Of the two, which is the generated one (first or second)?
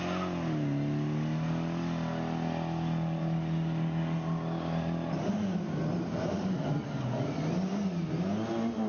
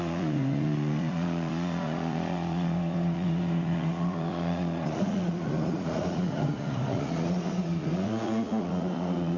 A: second